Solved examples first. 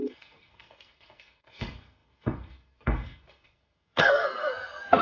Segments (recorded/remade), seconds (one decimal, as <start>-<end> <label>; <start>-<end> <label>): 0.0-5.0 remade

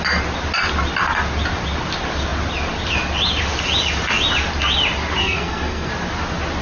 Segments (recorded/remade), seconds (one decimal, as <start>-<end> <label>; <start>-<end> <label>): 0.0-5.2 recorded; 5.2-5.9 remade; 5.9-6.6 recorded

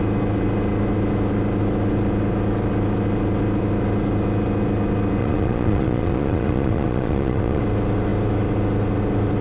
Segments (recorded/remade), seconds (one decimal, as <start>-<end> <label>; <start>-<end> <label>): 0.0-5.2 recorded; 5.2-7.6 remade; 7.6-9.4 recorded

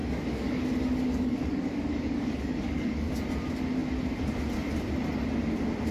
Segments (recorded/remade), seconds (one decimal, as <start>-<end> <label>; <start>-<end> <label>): 0.0-0.6 remade; 0.6-1.1 recorded; 1.1-3.1 remade; 3.1-5.9 recorded